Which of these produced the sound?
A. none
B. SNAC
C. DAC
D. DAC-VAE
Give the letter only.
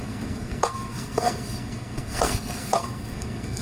B